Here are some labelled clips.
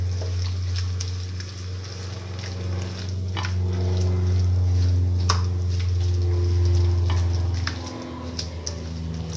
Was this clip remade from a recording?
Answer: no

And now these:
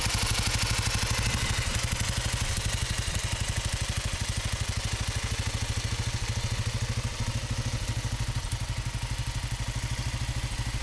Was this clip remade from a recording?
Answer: no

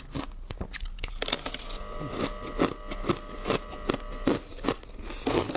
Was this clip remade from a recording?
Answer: no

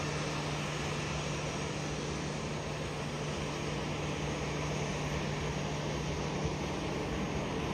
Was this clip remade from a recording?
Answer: no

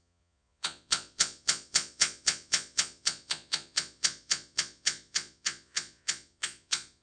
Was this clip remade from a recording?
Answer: yes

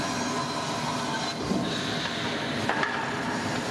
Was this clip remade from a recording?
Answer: no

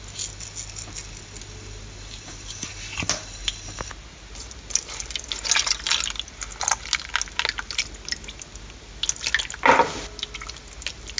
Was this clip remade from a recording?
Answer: no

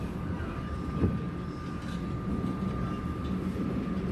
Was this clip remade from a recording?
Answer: no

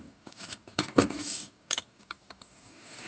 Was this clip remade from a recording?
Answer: yes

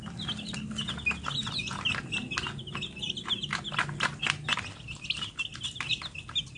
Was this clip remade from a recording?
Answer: no